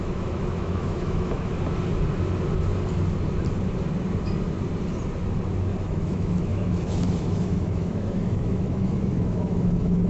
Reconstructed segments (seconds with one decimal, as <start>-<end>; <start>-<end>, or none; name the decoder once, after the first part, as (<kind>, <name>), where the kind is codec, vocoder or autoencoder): 0.0-1.5 (autoencoder, DAC-VAE); 5.8-10.1

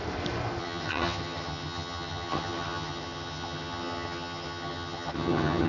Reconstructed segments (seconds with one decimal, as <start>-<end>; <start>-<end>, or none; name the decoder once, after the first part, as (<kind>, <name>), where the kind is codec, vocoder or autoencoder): 0.6-5.7 (vocoder, HiFi-GAN)

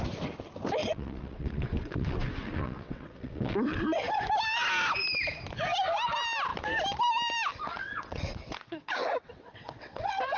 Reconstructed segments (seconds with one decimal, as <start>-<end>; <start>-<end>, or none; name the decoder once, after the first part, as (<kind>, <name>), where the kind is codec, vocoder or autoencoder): 0.8-4.2 (vocoder, WaveNeXt); 7.7-10.4

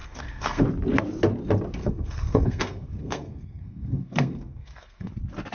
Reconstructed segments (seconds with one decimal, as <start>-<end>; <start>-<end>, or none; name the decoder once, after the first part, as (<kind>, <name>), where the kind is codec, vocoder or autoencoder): 0.0-0.6 (codec, SNAC); 1.8-5.1